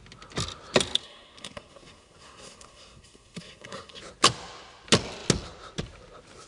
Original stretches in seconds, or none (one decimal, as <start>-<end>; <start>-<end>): 0.0-1.0; 4.0-6.5